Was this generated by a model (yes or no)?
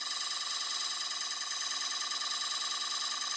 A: no